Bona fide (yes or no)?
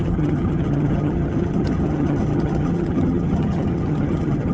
no